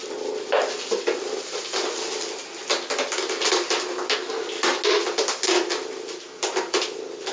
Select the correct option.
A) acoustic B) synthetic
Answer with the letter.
A